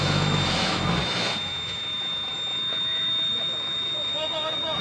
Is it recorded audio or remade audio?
remade